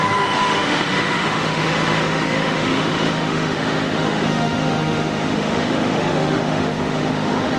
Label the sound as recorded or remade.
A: remade